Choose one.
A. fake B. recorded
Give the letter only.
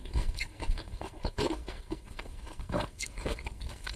A